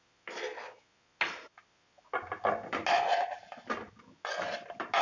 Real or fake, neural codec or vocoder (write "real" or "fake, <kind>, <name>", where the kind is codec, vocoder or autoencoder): real